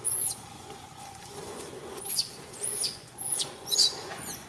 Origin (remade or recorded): remade